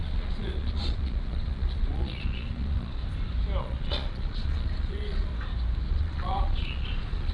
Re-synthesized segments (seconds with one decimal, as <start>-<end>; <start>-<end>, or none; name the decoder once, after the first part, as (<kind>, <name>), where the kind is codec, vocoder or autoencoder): 0.0-3.0 (vocoder, Vocos); 3.6-5.3; 5.9-7.3